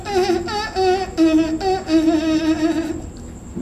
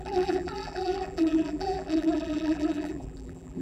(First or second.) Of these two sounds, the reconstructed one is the second